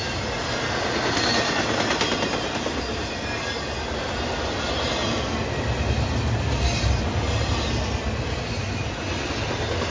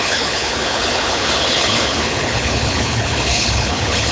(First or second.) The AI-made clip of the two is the second